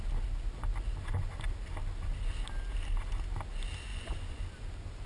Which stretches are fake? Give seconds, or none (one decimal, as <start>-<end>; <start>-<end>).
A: 3.9-4.4